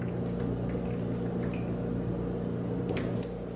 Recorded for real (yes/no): yes